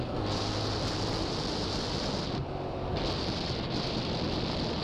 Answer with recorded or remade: recorded